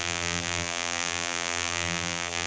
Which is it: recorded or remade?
remade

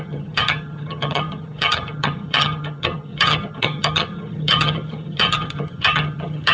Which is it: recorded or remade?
remade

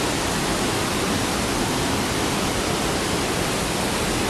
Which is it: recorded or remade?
recorded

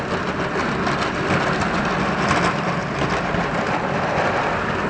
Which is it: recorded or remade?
recorded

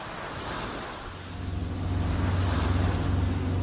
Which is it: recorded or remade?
recorded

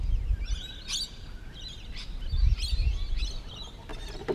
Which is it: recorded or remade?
recorded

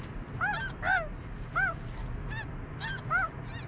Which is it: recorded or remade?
recorded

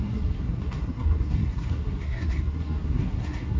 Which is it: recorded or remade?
remade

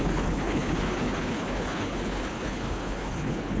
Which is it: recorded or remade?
remade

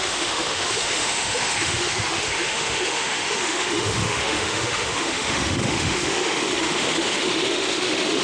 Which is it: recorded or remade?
remade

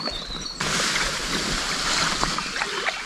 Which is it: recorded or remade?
recorded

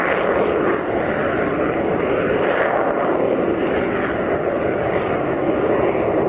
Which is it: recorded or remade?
recorded